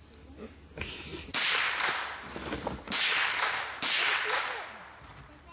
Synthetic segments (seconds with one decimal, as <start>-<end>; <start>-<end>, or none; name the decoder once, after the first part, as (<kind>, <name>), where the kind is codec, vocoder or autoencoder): 1.1-1.6 (vocoder, BigVGAN v2)